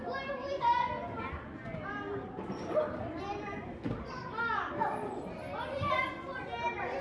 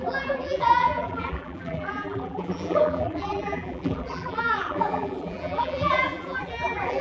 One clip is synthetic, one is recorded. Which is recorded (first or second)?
first